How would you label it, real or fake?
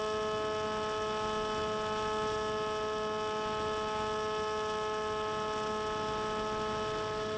real